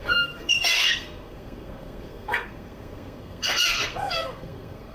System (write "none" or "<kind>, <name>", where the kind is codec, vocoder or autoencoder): codec, SNAC